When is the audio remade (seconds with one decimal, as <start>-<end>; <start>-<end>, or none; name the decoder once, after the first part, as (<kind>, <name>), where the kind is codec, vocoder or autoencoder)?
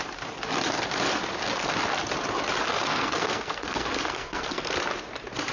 2.7-4.7 (codec, SNAC)